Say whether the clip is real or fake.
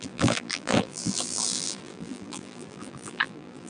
fake